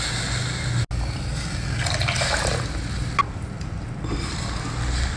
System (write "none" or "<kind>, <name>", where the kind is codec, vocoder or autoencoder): none